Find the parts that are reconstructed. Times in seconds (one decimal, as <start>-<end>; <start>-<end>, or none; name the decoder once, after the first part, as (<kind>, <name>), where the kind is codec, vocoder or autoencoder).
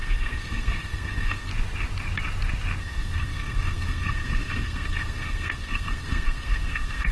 0.0-1.5 (codec, SNAC); 2.8-7.1